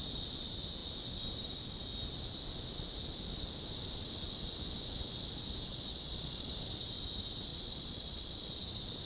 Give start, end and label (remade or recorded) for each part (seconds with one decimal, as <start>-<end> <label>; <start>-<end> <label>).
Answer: 0.0-5.7 recorded; 5.7-6.5 remade; 6.5-7.5 recorded; 7.5-8.6 remade; 8.6-9.1 recorded